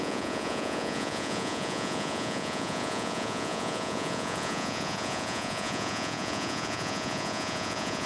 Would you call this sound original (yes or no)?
no